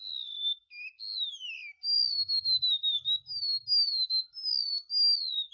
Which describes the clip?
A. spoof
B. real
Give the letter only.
B